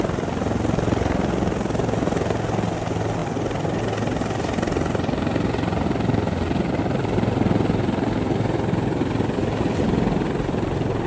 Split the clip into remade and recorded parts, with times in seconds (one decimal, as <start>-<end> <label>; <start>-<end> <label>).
0.0-11.1 recorded